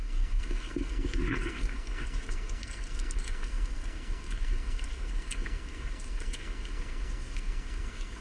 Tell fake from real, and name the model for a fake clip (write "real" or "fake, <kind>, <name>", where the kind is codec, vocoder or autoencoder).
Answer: fake, codec, SNAC